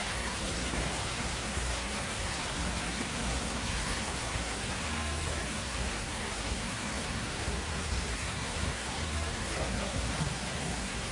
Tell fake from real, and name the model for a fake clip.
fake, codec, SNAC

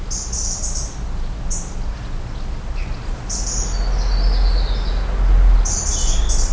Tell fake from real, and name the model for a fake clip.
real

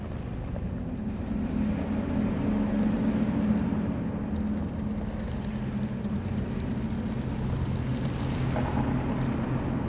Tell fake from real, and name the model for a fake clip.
real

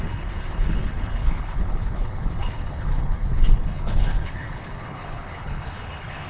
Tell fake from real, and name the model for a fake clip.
fake, codec, HILCodec